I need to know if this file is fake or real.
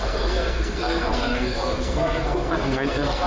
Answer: fake